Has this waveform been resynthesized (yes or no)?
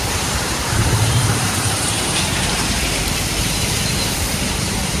yes